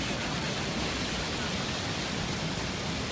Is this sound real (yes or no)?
yes